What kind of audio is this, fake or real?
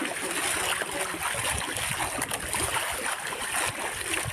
real